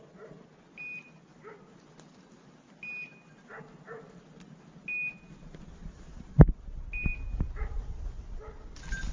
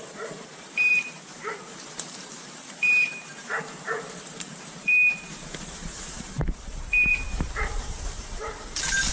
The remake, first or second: second